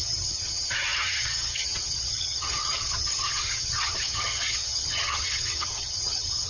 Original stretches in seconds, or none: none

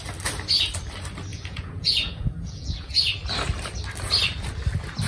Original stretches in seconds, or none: 0.0-1.3; 2.9-5.1

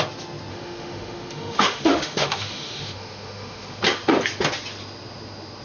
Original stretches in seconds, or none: 0.0-0.5; 3.8-5.6

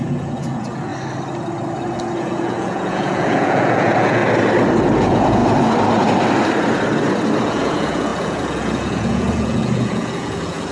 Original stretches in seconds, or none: 0.9-2.2; 4.2-5.0; 5.4-7.4